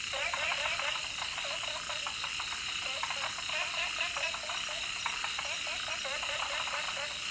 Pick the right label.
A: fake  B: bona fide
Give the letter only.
B